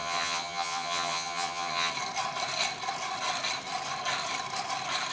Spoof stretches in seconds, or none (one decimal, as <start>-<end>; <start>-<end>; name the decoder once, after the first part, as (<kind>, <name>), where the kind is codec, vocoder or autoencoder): 0.0-1.9 (vocoder, HiFi-GAN)